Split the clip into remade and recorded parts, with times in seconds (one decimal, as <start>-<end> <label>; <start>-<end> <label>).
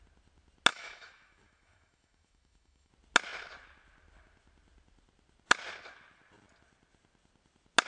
0.0-0.7 recorded; 0.7-2.9 remade; 2.9-7.9 recorded